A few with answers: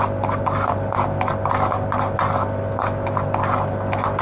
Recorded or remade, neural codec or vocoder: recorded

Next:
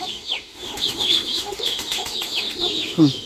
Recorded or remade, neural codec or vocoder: remade, autoencoder, DAC-VAE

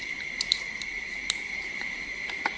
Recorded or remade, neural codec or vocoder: remade, vocoder, BigVGAN v2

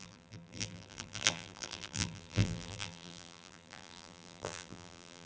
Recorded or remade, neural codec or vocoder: remade, vocoder, BigVGAN v2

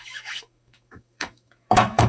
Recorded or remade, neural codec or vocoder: remade, autoencoder, DAC-VAE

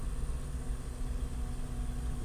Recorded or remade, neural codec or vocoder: recorded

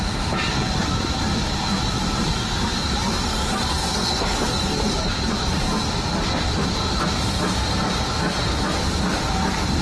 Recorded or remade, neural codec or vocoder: recorded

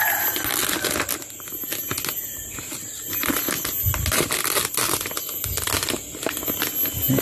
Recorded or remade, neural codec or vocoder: recorded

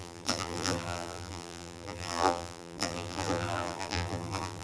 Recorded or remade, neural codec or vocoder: remade, vocoder, BigVGAN v2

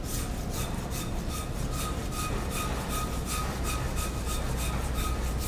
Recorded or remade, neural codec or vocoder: recorded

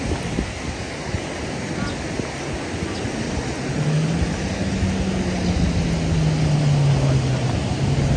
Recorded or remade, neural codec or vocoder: recorded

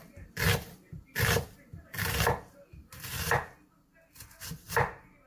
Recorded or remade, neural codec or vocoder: recorded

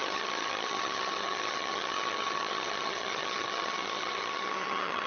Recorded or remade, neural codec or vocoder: remade, vocoder, HiFi-GAN